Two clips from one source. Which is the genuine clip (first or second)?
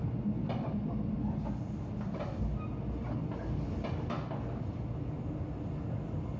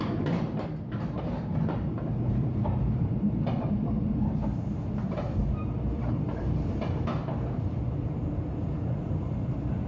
first